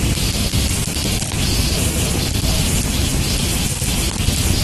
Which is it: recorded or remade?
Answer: recorded